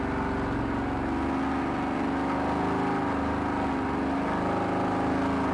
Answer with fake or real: real